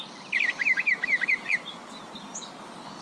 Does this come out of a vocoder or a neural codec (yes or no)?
no